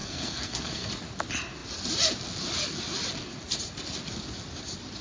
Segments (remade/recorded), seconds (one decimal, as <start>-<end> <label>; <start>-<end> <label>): 0.0-0.9 remade; 0.9-5.0 recorded